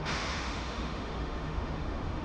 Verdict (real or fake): fake